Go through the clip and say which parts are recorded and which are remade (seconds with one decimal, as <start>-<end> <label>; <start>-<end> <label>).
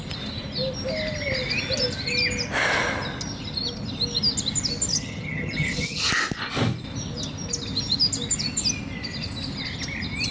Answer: 0.0-4.9 recorded; 4.9-6.1 remade; 6.1-10.3 recorded